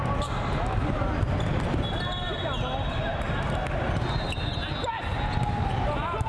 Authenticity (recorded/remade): recorded